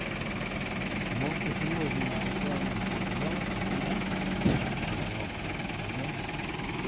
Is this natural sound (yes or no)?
yes